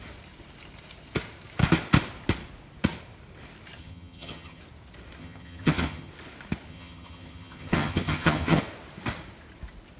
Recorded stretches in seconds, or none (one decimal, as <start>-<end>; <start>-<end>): 0.0-3.8; 4.6-5.2; 6.1-6.7; 8.6-10.0